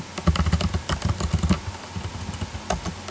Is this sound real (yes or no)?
yes